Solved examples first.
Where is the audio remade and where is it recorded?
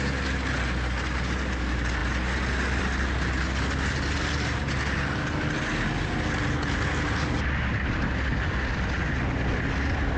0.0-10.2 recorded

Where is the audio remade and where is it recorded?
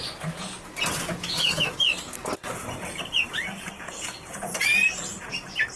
0.0-1.1 recorded; 1.1-1.8 remade; 1.8-5.8 recorded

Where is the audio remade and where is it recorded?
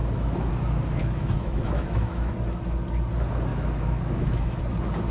0.0-0.5 remade; 0.5-1.0 recorded; 1.0-2.3 remade; 2.3-3.5 recorded; 3.5-4.6 remade; 4.6-5.1 recorded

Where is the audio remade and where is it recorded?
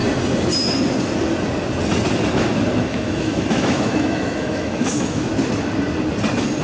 0.0-2.8 recorded; 2.8-5.3 remade; 5.3-6.6 recorded